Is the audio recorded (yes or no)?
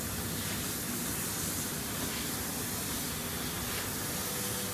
yes